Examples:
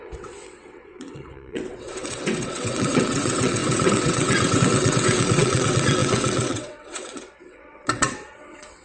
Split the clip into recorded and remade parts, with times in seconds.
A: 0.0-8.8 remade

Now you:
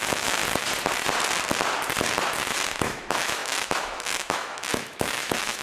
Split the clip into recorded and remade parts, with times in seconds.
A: 0.0-0.4 remade; 0.4-2.8 recorded; 2.8-5.6 remade

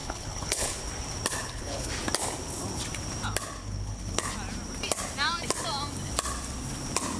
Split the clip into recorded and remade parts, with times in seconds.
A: 0.0-0.8 remade; 0.8-1.4 recorded; 1.4-1.9 remade; 1.9-3.6 recorded; 3.6-4.3 remade; 4.3-7.2 recorded

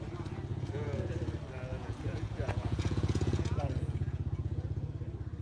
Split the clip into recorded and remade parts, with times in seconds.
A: 0.0-0.5 recorded; 0.5-1.1 remade; 1.1-1.7 recorded; 1.7-4.9 remade; 4.9-5.4 recorded

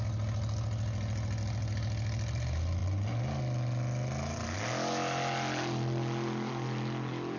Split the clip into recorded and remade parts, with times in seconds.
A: 0.0-7.4 recorded